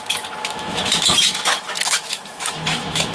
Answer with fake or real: fake